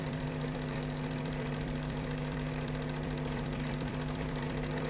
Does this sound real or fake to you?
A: fake